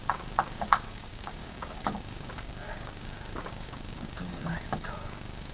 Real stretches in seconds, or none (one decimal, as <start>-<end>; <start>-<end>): none